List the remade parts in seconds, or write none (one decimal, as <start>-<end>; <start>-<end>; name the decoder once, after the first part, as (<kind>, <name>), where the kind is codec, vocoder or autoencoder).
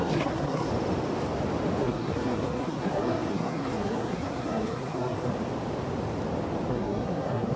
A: 0.0-0.7 (codec, SNAC); 1.8-5.3; 6.7-7.6